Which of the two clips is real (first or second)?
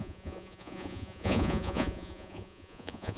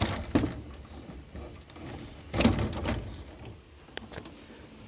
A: second